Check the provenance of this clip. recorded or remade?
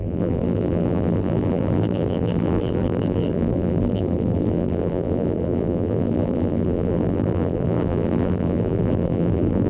remade